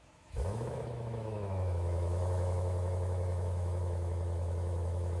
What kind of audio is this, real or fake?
fake